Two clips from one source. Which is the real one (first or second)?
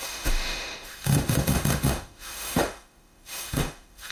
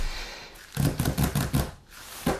second